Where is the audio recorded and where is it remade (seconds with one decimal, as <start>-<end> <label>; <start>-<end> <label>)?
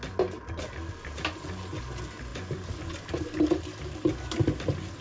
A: 0.0-5.0 recorded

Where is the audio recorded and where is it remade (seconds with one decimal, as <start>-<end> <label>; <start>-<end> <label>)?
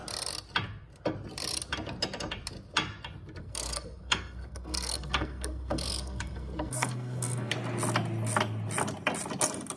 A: 0.0-3.4 recorded; 3.4-7.5 remade; 7.5-9.8 recorded